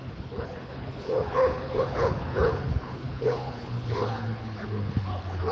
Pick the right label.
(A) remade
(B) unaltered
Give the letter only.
A